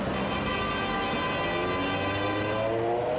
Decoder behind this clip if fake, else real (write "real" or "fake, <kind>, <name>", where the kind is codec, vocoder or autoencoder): real